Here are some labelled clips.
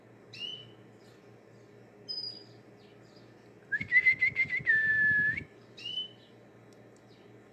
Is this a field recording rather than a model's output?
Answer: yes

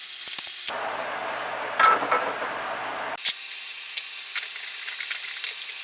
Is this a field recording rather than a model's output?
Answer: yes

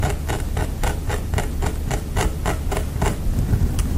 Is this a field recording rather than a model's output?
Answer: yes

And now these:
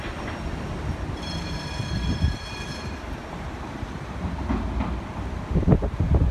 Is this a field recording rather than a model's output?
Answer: no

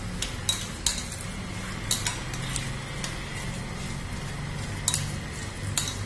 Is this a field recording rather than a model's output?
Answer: yes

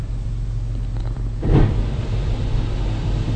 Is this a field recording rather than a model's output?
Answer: no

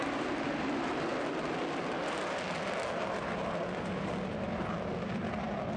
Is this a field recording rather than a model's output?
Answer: yes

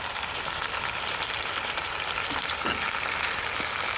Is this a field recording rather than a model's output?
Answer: yes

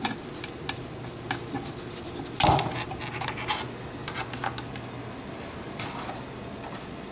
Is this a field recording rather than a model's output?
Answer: yes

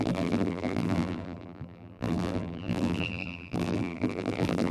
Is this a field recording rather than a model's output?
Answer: no